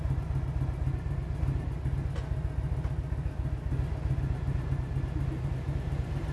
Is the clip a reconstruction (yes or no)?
no